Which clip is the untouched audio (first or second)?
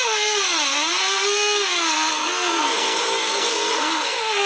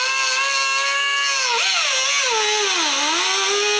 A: second